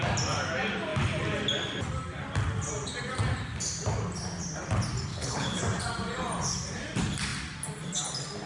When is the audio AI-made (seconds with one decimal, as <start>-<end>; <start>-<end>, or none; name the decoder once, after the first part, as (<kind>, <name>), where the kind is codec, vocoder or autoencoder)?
5.1-5.6 (codec, HILCodec)